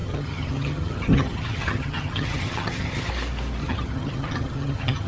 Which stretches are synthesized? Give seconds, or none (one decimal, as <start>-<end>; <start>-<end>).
0.0-3.1; 3.6-5.1